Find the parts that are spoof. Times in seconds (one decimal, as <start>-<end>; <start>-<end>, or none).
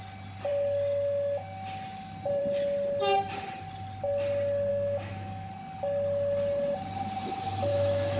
4.7-5.5; 7.7-8.2